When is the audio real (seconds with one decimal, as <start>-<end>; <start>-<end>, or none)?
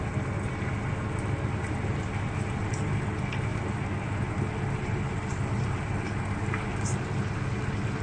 0.0-8.0